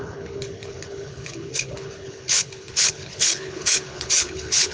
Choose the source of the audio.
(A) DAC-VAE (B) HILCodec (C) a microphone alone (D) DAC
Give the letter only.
B